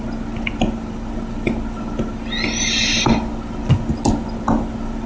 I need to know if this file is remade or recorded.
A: recorded